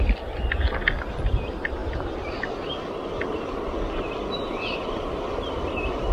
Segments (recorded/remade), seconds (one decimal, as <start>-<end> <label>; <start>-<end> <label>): 0.0-6.1 recorded